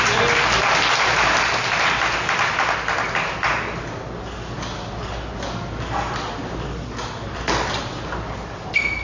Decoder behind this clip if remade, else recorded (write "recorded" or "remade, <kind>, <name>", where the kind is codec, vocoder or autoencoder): recorded